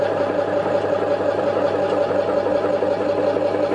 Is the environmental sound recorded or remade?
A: recorded